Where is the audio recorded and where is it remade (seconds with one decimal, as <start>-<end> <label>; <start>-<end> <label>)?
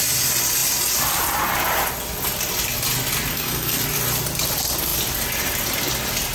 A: 0.0-3.3 recorded; 3.3-3.8 remade; 3.8-6.3 recorded